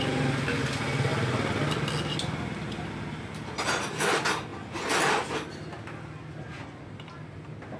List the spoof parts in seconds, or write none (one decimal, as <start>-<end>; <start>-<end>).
none